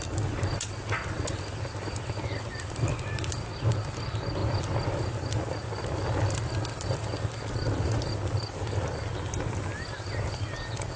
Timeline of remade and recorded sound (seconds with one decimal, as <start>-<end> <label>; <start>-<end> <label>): 0.0-11.0 recorded